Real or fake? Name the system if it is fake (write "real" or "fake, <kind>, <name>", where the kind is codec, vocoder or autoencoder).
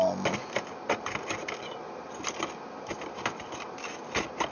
real